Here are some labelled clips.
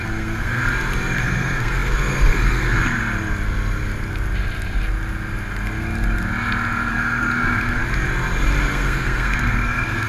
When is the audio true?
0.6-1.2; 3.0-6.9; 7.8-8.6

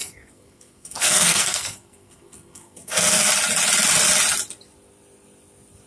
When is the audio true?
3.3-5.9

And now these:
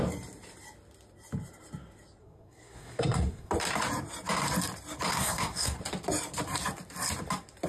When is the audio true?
0.0-2.2; 3.5-5.1; 5.8-7.7

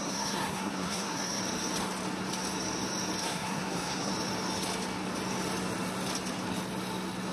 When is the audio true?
1.4-3.2; 4.1-7.3

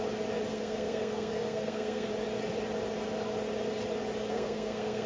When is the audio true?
0.0-0.5; 2.1-4.3

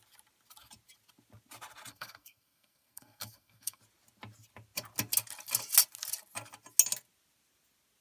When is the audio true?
0.0-1.9; 3.8-8.0

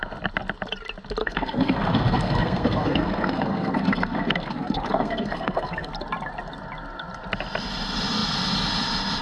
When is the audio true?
0.0-1.2; 5.9-9.2